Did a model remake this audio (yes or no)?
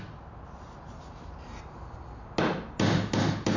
no